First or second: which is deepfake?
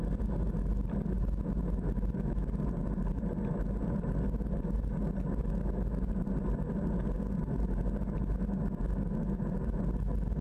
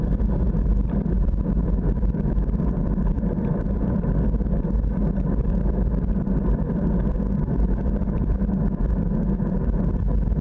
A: second